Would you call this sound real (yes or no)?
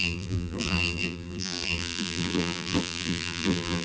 no